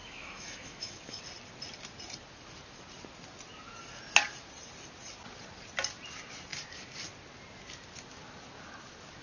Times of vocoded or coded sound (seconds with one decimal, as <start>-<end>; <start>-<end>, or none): 0.0-1.2

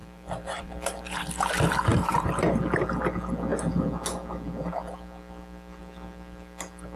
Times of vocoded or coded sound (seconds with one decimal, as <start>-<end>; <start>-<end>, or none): 0.0-1.5; 1.9-2.6

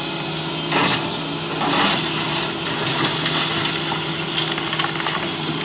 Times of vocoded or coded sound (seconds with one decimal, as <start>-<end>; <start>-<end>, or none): none

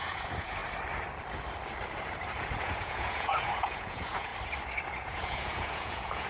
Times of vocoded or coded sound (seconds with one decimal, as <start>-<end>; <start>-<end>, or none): 0.0-0.6; 2.6-4.3; 5.0-6.3

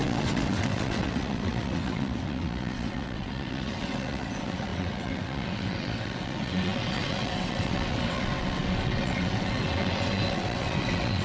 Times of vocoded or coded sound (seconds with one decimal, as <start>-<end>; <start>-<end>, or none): 0.0-11.2

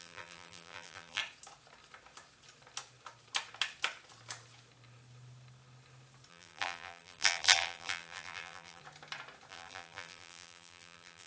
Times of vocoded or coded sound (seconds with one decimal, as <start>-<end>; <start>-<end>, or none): 0.0-1.2; 6.3-8.8; 9.5-11.3